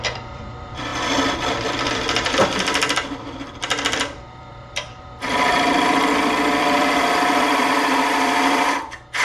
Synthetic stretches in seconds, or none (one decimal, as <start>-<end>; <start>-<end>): 0.0-0.9; 1.7-9.2